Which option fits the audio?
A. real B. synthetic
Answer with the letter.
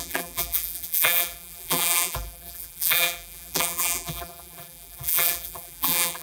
B